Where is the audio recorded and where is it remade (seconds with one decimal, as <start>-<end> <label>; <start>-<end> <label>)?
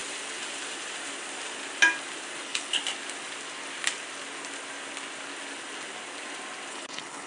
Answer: 0.0-2.4 recorded; 2.4-2.8 remade; 2.8-6.7 recorded; 6.7-7.3 remade